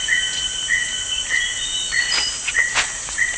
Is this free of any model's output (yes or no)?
no